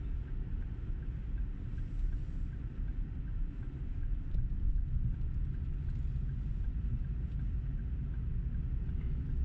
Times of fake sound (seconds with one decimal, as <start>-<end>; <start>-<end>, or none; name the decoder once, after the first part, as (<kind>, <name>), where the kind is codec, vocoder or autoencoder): none

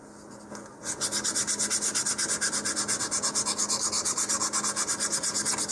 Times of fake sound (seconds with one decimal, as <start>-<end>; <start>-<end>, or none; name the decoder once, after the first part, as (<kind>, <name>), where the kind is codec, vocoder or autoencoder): none

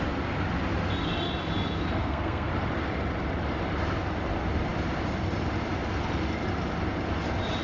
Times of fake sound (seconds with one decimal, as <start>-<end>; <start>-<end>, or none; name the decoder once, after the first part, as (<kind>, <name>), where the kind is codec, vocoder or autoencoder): 2.0-2.5 (codec, SNAC)

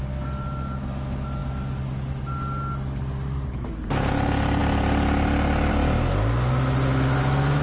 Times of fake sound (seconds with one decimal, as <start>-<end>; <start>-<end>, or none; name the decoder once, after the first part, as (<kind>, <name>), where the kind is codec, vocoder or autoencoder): none

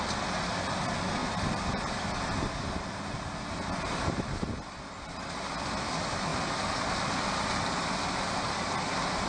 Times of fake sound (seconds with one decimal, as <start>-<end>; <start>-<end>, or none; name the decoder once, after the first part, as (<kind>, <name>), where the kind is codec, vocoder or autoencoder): none

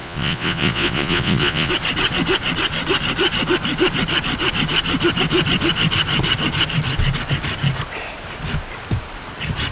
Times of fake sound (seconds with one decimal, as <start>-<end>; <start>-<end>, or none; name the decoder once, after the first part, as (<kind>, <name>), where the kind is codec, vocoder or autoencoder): 0.0-1.7 (vocoder, Vocos)